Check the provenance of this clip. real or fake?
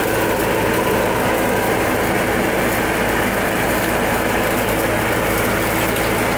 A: real